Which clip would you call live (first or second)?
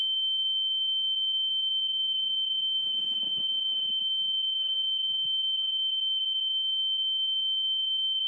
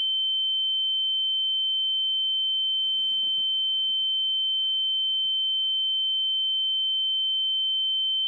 second